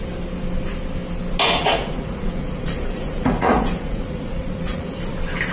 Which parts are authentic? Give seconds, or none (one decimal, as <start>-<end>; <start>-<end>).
0.0-1.6; 4.9-5.5